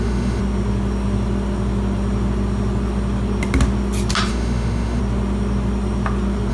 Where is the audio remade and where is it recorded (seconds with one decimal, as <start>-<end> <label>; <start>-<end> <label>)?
0.0-0.4 remade; 0.4-4.3 recorded; 4.3-5.0 remade; 5.0-6.5 recorded